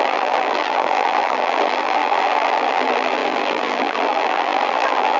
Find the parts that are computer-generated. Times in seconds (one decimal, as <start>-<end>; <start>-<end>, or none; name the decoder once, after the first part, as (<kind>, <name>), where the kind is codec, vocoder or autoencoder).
0.0-5.2 (vocoder, BigVGAN v2)